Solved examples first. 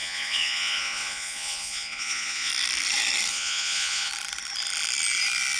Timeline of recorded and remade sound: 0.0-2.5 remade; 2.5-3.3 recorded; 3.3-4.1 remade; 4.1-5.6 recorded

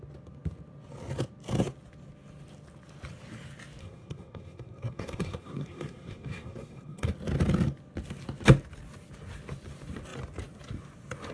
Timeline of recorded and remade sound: 0.0-3.8 recorded; 3.8-7.1 remade; 7.1-11.3 recorded